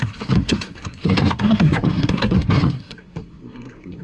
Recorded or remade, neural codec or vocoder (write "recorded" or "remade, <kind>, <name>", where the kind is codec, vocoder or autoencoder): remade, codec, SNAC